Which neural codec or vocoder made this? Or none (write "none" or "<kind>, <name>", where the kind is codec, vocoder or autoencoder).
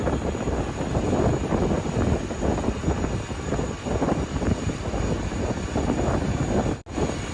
none